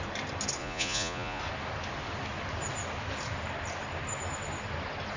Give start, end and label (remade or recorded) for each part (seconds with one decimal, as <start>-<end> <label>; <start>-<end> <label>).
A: 0.0-0.6 recorded; 0.6-1.4 remade; 1.4-5.2 recorded